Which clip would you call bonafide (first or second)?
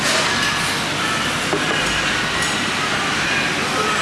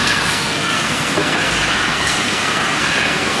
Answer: first